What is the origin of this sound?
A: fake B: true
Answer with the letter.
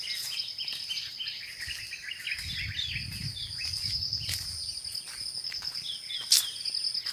B